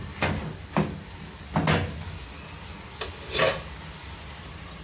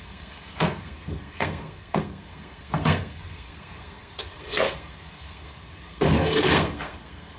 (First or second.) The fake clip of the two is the second